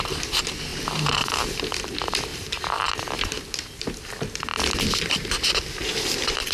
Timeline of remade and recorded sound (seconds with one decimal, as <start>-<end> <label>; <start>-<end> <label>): 0.0-0.7 recorded; 0.7-1.6 remade; 1.6-2.3 recorded; 2.3-2.9 remade; 2.9-6.5 recorded